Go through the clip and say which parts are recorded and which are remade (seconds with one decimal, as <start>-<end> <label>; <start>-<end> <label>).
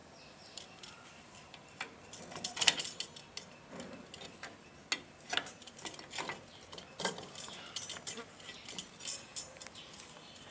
0.0-2.2 remade; 2.2-9.3 recorded; 9.3-10.5 remade